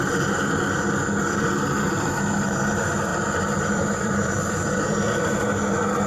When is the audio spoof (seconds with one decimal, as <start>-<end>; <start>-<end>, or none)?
3.1-5.3